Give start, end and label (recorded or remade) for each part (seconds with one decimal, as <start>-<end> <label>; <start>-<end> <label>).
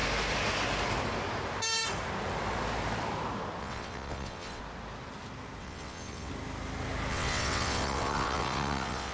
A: 0.0-3.6 recorded; 3.6-4.6 remade; 4.6-5.6 recorded; 5.6-6.3 remade; 6.3-7.1 recorded; 7.1-9.1 remade